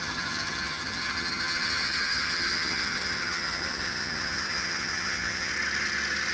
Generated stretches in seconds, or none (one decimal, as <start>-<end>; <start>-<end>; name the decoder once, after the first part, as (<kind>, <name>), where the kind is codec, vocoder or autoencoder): 0.0-5.5 (vocoder, HiFi-GAN)